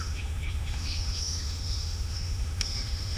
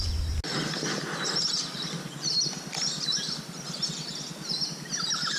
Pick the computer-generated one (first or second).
first